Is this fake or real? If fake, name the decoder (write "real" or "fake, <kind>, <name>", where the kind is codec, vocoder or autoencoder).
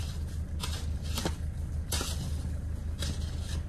real